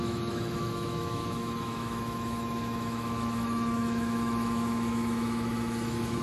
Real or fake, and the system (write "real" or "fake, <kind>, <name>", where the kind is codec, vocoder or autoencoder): fake, autoencoder, DAC-VAE